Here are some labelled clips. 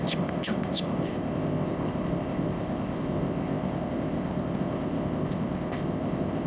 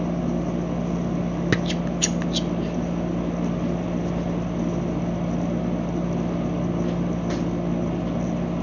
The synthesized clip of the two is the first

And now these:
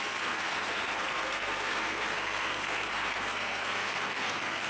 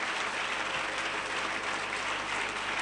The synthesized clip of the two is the first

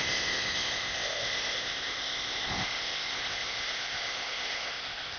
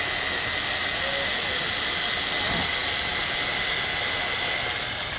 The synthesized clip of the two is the first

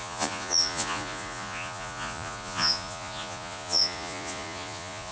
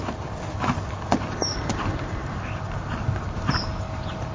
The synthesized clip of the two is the first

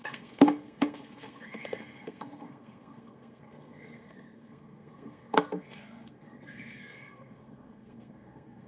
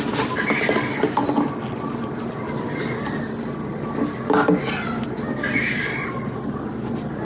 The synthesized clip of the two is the first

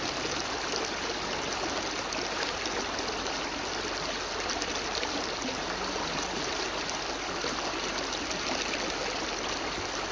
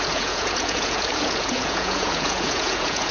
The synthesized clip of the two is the second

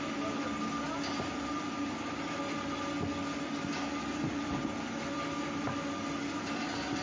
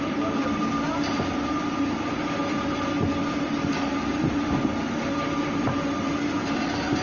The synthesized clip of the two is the second